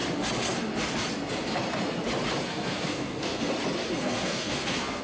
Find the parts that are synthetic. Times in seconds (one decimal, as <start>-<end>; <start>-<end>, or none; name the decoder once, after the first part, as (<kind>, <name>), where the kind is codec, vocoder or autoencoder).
2.5-3.5 (codec, SNAC); 4.0-5.0